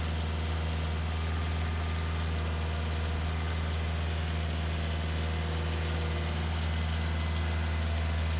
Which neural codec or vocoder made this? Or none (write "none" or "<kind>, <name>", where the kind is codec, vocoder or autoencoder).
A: none